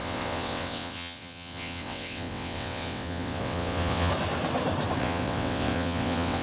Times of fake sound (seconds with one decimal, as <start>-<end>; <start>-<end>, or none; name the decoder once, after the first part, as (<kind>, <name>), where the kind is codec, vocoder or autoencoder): 0.0-4.1 (vocoder, WaveNeXt); 5.0-6.4